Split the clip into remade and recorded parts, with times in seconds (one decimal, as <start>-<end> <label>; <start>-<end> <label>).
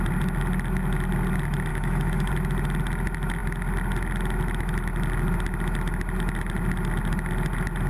0.0-1.7 recorded; 1.7-2.3 remade; 2.3-7.9 recorded